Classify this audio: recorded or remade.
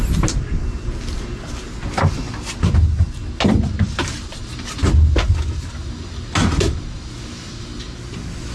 recorded